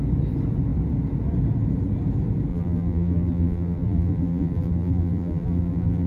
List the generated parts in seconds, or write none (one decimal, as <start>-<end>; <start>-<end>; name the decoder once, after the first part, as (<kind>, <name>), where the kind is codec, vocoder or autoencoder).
2.5-6.1 (vocoder, BigVGAN v2)